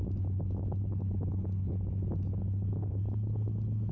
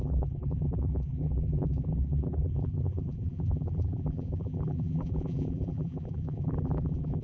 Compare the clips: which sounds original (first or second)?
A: first